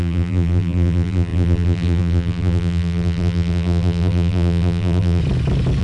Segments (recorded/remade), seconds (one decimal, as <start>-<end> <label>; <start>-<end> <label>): 0.0-5.2 remade; 5.2-5.8 recorded